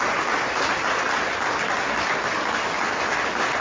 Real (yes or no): yes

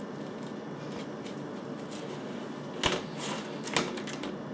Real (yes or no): yes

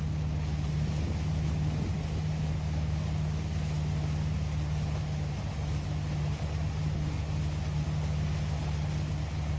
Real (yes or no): yes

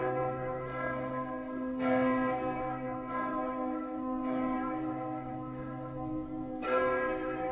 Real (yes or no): no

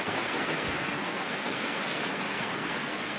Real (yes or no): no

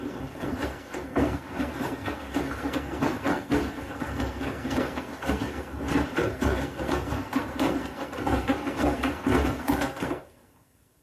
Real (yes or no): no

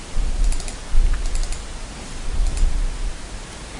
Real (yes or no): yes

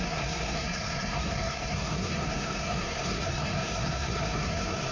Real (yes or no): no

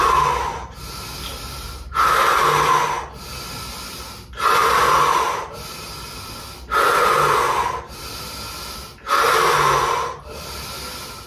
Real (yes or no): yes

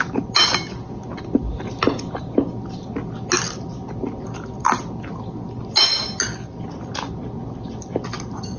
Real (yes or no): yes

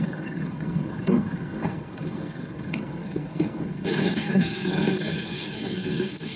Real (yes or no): no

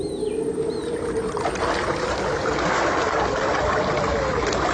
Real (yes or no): yes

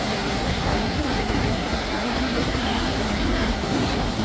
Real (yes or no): no